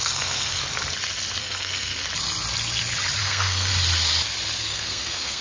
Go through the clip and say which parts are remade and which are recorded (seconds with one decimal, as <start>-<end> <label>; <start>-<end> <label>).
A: 0.0-0.6 remade; 0.6-1.4 recorded; 1.4-2.0 remade; 2.0-3.2 recorded; 3.2-3.7 remade; 3.7-4.6 recorded; 4.6-5.4 remade